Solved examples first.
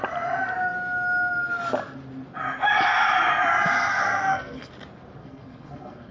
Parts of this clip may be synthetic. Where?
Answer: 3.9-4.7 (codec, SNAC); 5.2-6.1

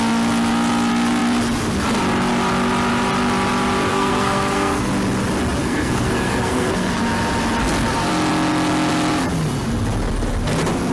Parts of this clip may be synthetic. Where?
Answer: 3.9-4.9 (codec, SNAC); 5.6-7.0

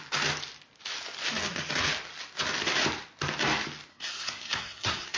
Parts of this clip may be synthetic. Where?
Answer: 3.9-5.2 (codec, SNAC)